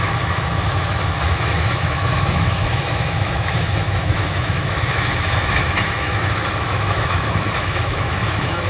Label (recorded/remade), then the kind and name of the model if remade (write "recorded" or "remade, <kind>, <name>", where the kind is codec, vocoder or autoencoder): remade, autoencoder, DAC-VAE